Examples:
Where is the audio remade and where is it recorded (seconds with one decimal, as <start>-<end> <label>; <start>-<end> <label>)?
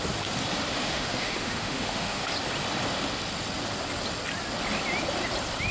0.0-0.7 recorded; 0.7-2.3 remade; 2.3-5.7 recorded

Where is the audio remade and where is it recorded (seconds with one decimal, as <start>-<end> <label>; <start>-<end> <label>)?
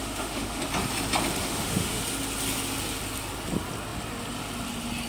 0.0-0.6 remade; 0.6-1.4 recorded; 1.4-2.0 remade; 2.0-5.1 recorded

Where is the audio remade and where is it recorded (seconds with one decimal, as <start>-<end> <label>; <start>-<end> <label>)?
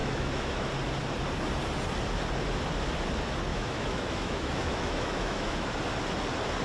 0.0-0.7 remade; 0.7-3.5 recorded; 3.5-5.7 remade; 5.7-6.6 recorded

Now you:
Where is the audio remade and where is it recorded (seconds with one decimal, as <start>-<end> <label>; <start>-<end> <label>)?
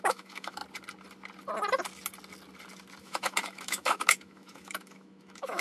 0.0-0.6 remade; 0.6-3.0 recorded; 3.0-5.6 remade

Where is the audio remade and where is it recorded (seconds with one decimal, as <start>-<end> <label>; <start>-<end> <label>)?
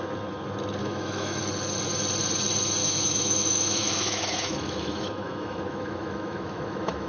0.0-0.8 recorded; 0.8-1.4 remade; 1.4-2.8 recorded; 2.8-7.1 remade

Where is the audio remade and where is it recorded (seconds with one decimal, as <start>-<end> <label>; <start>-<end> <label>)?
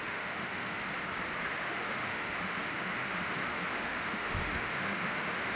0.0-0.8 remade; 0.8-1.6 recorded; 1.6-5.6 remade